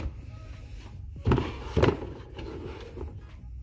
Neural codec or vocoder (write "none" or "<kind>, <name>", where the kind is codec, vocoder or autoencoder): none